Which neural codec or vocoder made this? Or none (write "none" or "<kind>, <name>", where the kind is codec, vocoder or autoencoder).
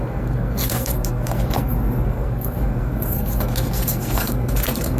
codec, SNAC